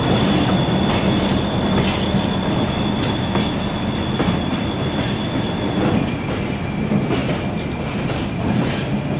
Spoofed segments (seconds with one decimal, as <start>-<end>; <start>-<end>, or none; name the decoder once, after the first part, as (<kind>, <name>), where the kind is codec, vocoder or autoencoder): none